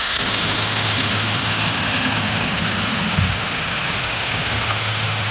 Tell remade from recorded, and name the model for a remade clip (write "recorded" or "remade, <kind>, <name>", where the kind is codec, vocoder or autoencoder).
remade, autoencoder, DAC-VAE